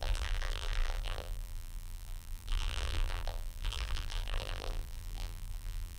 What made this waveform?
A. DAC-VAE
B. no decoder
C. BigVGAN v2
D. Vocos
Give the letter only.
C